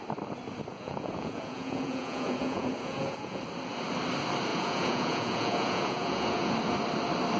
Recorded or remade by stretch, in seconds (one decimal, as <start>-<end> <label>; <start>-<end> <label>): 0.0-0.7 recorded; 0.7-3.4 remade; 3.4-4.5 recorded; 4.5-6.5 remade; 6.5-7.4 recorded